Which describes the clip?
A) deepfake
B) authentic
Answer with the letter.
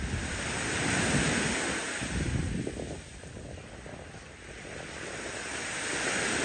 B